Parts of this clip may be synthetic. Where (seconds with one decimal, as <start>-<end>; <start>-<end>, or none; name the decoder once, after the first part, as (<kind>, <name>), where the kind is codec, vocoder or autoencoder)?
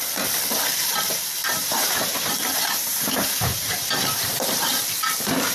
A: 1.4-4.7 (vocoder, BigVGAN v2)